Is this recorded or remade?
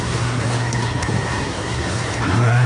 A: remade